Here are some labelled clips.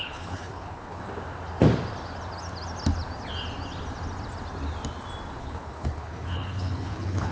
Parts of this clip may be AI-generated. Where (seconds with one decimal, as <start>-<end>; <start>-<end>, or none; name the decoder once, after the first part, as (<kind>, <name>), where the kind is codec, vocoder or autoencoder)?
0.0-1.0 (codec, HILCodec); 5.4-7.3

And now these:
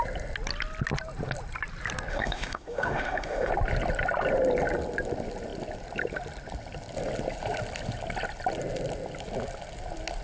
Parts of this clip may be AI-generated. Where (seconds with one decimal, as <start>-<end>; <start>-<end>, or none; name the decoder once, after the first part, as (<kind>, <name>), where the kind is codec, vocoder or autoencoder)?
2.1-3.5 (autoencoder, DAC-VAE)

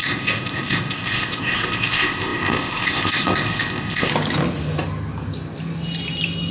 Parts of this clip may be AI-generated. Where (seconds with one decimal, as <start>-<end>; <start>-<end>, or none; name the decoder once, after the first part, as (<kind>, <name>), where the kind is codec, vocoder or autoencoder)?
0.0-4.1 (codec, ZipCodec)